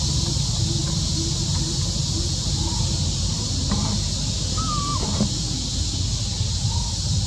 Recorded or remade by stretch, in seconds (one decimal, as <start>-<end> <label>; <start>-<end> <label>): 0.0-0.8 recorded; 0.8-5.2 remade; 5.2-7.3 recorded